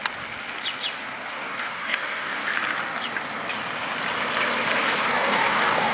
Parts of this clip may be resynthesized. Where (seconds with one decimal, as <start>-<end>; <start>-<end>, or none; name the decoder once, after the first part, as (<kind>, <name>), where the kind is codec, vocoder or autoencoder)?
1.3-2.4 (codec, DAC); 4.8-5.9